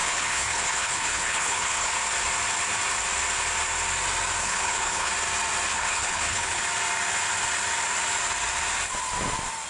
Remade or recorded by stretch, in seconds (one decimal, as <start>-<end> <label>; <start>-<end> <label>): 0.0-1.9 remade; 1.9-4.4 recorded; 4.4-5.1 remade; 5.1-5.7 recorded; 5.7-6.6 remade; 6.6-9.7 recorded